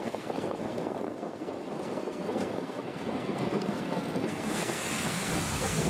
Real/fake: fake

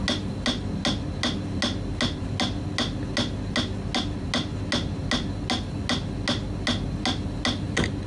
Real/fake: real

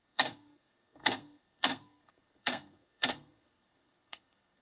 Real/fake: fake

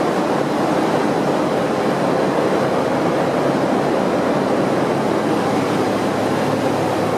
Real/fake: real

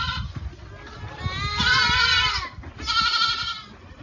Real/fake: real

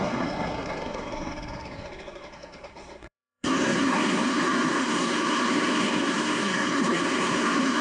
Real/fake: fake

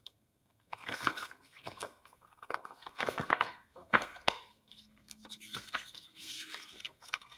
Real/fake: fake